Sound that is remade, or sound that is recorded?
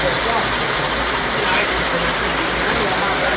recorded